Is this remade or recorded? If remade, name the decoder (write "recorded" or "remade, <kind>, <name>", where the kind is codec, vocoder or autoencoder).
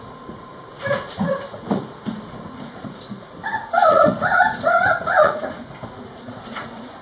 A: remade, vocoder, Vocos